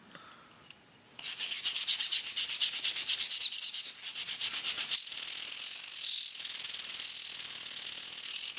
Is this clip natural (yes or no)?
yes